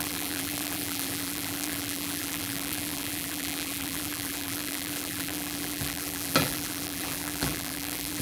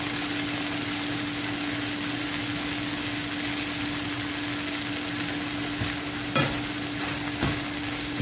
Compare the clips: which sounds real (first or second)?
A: second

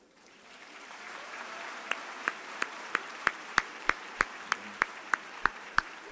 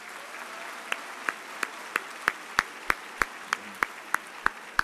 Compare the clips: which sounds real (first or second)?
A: second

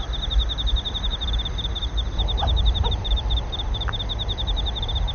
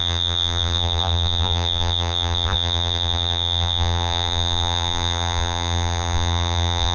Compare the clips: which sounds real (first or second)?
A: first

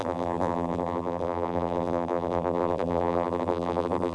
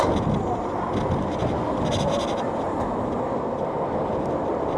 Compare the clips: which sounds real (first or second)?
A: second